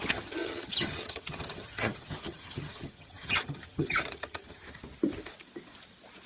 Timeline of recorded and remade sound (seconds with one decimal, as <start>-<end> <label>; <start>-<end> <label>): 0.0-4.6 remade; 4.6-6.3 recorded